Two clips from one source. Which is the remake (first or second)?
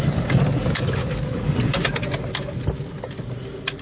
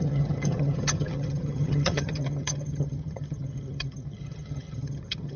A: second